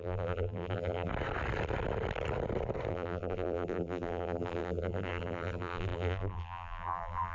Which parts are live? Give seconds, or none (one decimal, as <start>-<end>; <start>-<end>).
1.1-2.9